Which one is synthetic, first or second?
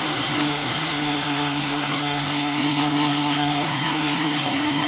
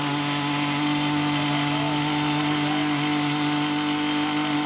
first